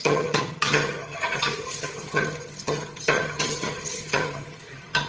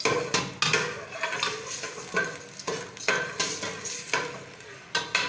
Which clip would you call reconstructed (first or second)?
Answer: first